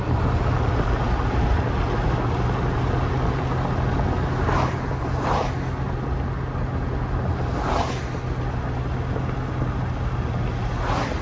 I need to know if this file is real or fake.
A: real